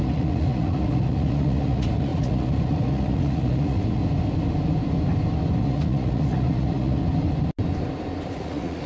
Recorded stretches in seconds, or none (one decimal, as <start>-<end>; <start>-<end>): 4.0-5.6; 7.0-8.3